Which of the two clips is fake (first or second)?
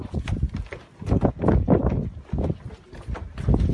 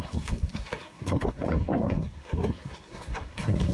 second